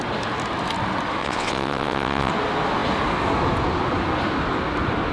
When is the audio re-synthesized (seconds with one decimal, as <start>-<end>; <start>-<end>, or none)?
1.2-2.3